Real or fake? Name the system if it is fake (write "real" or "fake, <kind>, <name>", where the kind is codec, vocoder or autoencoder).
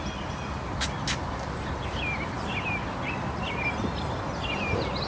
real